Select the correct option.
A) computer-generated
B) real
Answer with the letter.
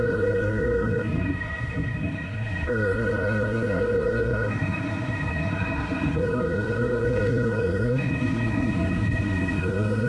A